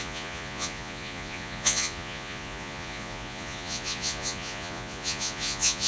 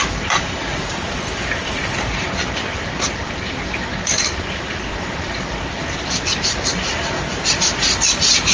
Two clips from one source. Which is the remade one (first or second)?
first